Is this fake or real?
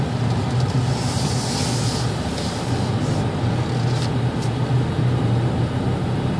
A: real